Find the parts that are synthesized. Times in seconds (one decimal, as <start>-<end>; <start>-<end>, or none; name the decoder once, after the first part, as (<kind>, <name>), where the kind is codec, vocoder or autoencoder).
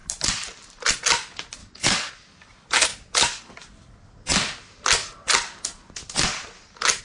1.6-2.1 (codec, DAC); 2.9-3.5